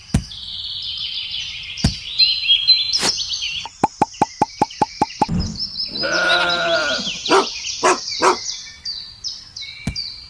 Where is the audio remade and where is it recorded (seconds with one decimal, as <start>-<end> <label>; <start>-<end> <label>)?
0.0-10.3 recorded